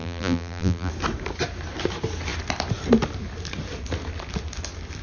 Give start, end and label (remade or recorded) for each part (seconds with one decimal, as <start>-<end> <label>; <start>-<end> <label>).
0.0-0.9 remade; 0.9-5.0 recorded